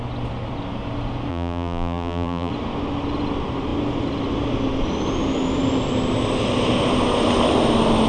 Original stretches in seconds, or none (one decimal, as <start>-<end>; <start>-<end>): 0.0-1.3; 2.5-8.1